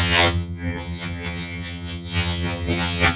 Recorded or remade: remade